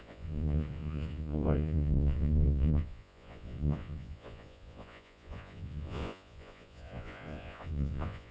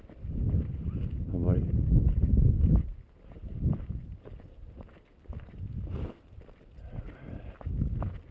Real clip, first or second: second